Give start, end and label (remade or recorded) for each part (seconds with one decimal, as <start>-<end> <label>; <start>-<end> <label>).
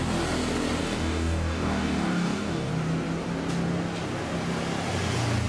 0.0-0.8 recorded; 0.8-2.7 remade; 2.7-5.5 recorded